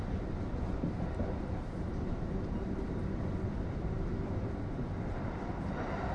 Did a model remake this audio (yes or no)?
yes